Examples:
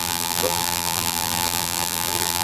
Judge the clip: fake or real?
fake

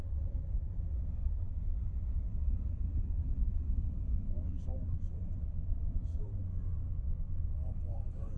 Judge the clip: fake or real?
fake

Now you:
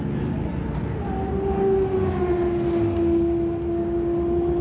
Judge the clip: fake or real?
real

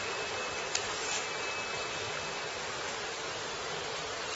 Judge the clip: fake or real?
real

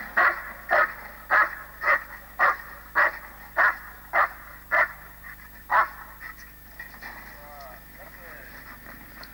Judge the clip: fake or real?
real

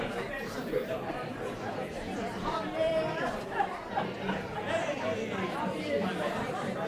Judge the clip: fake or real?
fake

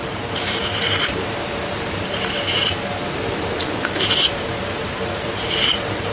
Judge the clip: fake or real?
fake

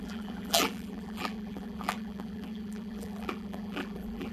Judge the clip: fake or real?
fake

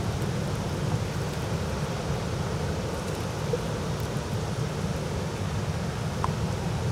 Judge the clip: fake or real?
real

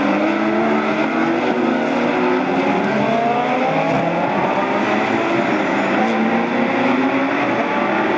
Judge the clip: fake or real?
real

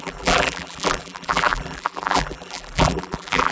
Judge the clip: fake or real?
fake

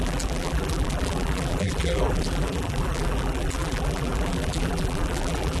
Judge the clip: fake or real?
fake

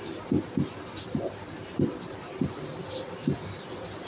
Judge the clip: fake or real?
real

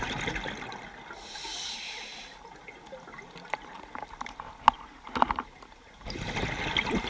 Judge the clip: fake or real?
real